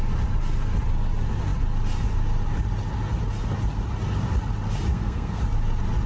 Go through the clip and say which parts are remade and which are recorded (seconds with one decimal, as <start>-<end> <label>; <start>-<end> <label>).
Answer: 0.0-4.9 recorded; 4.9-5.4 remade; 5.4-6.1 recorded